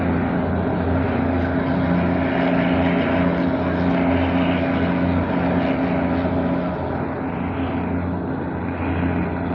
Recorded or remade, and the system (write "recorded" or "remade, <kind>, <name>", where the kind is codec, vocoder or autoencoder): recorded